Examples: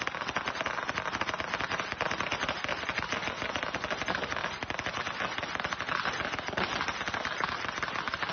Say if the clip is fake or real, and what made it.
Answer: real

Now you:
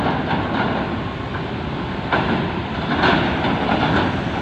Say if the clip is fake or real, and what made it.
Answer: real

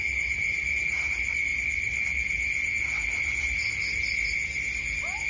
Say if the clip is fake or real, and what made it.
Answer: real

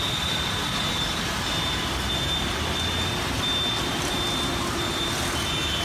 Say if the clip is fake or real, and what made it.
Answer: real